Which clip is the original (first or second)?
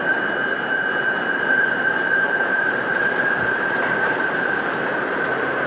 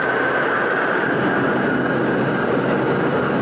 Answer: second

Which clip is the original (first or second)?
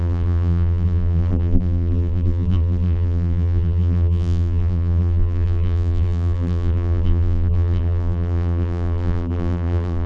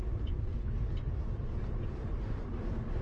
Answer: second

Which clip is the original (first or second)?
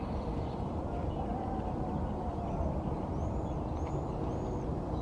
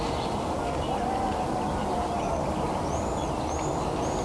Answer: second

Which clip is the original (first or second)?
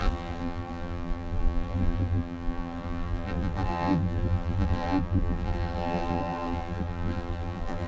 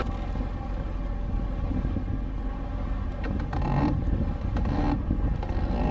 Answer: second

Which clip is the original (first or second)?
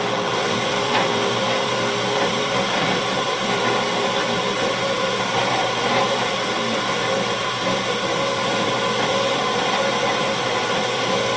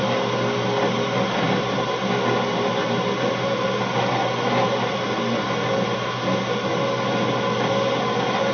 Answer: second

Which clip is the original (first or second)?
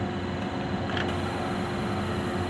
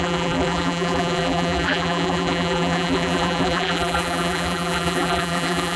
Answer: first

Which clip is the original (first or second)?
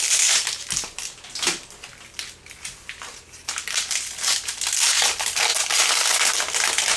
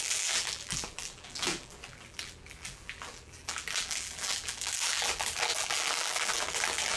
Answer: first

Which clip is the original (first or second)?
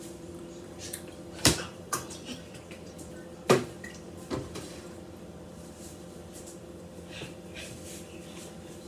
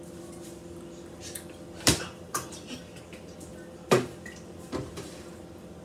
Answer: second